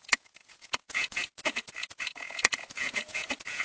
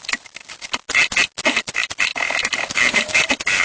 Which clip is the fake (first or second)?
first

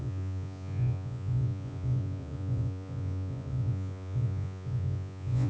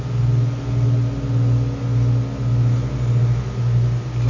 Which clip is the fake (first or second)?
first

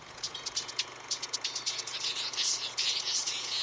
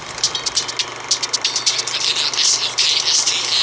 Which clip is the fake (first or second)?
first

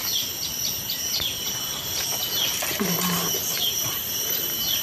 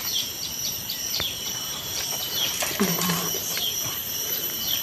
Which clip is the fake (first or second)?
second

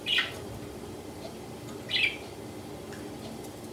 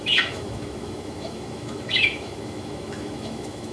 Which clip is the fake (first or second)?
second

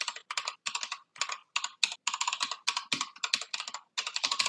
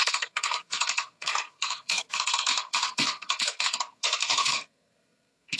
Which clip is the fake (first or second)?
second